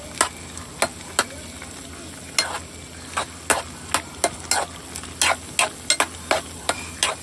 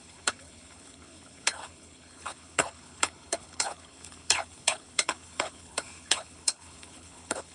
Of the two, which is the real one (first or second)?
first